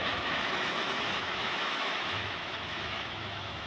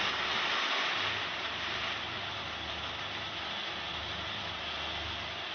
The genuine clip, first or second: second